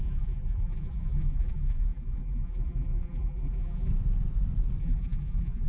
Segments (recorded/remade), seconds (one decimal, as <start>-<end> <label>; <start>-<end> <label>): 0.0-3.9 remade; 3.9-4.8 recorded; 4.8-5.7 remade

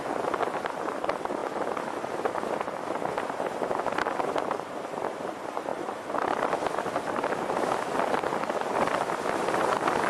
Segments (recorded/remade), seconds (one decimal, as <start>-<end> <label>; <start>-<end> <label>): 0.0-1.4 recorded; 1.4-2.3 remade; 2.3-5.7 recorded; 5.7-7.3 remade; 7.3-10.1 recorded

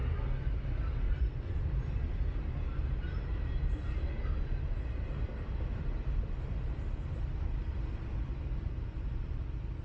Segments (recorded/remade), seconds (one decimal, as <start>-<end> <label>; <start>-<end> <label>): 0.0-4.8 recorded; 4.8-9.8 remade

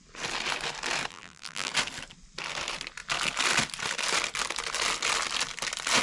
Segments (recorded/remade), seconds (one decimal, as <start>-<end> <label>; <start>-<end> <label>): 0.0-1.1 recorded; 1.1-1.7 remade; 1.7-6.0 recorded

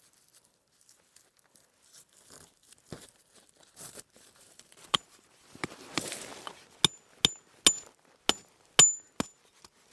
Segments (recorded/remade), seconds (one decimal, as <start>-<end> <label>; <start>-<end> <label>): 0.0-6.3 remade; 6.3-9.9 recorded

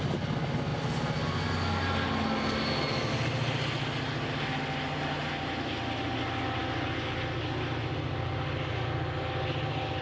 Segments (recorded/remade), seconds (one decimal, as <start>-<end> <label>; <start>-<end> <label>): 0.0-10.0 recorded

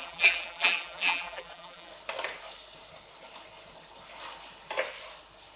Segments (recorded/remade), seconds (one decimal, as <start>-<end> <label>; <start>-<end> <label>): 0.0-1.9 remade; 1.9-5.6 recorded